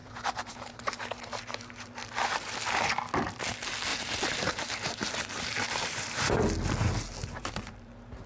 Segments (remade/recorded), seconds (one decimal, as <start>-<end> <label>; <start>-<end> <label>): 0.0-0.9 remade; 0.9-3.9 recorded; 3.9-6.4 remade; 6.4-7.2 recorded; 7.2-8.3 remade